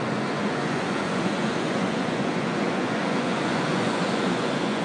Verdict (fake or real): fake